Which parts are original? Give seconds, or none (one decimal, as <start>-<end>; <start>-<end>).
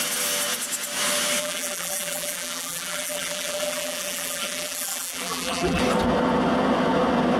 0.0-1.4; 5.8-7.4